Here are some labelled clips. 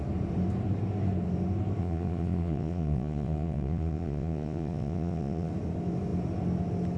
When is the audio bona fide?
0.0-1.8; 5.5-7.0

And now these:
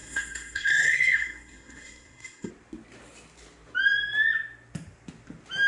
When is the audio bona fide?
2.5-5.7

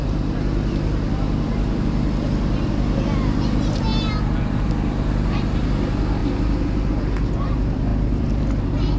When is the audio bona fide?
0.0-7.9; 8.6-9.0

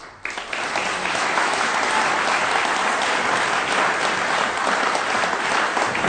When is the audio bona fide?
0.0-1.0; 1.7-6.1

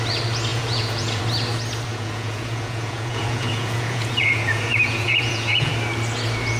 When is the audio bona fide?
0.0-0.5; 1.2-1.9; 5.7-6.6

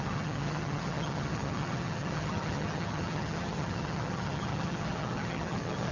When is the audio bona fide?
none